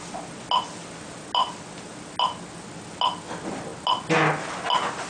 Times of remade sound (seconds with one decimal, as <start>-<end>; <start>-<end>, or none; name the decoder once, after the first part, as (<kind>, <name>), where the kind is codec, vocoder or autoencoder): none